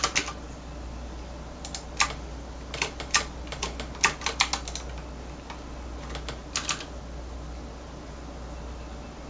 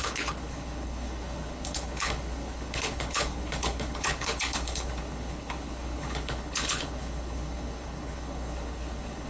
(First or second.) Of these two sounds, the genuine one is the first